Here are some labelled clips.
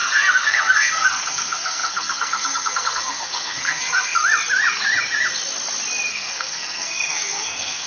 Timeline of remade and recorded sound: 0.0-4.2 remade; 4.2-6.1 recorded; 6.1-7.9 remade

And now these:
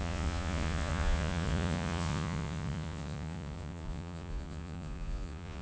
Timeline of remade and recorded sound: 0.0-5.6 remade

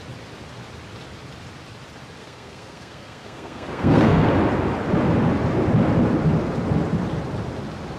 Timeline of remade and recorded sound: 0.0-2.2 recorded; 2.2-4.3 remade; 4.3-8.0 recorded